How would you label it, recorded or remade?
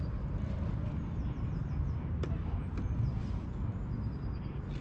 recorded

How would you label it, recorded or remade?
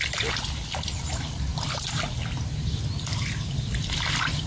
recorded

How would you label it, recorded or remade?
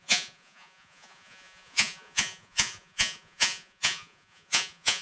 remade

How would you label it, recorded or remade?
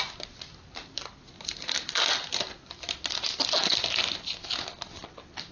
recorded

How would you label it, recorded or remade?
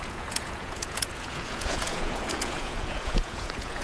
remade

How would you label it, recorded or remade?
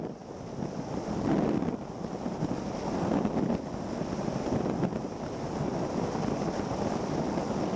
recorded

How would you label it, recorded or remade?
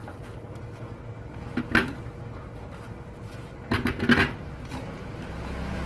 recorded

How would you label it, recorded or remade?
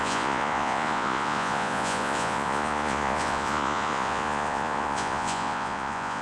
remade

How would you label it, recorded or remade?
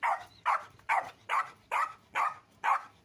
recorded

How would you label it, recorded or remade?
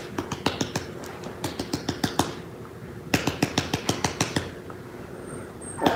recorded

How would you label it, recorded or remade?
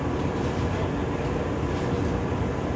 recorded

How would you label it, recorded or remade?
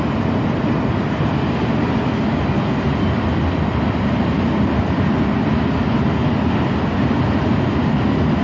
recorded